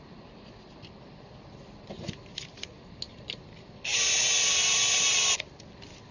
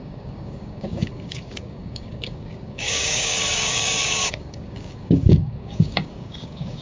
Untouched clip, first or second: first